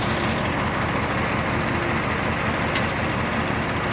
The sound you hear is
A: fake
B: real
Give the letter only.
B